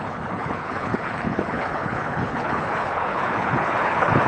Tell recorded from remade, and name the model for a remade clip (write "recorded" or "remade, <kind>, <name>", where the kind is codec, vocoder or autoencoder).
remade, codec, HILCodec